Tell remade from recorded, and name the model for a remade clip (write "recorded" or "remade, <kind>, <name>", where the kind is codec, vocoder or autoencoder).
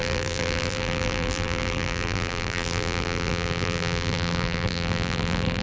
remade, vocoder, BigVGAN v2